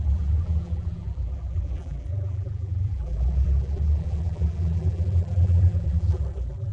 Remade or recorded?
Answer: remade